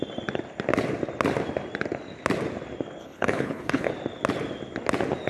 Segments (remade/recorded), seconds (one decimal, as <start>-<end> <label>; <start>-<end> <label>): 0.0-3.0 recorded; 3.0-3.9 remade; 3.9-5.3 recorded